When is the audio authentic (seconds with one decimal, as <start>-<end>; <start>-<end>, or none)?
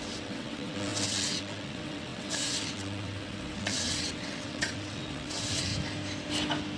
5.7-6.8